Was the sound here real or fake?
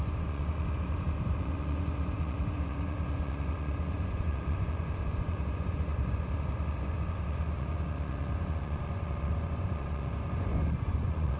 fake